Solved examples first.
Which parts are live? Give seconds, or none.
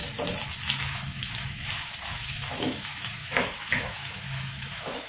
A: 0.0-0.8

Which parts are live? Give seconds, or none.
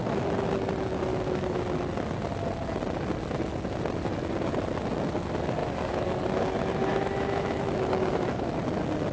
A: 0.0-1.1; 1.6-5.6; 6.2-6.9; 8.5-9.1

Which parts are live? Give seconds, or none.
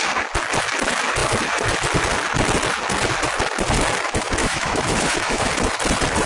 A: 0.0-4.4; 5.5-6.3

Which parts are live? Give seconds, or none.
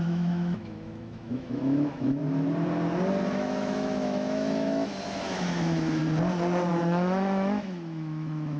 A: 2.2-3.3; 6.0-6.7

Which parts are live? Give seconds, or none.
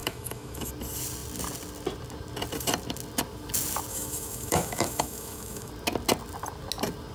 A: 0.7-3.9; 5.7-7.1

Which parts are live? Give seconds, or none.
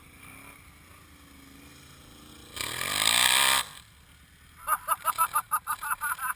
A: 0.0-6.4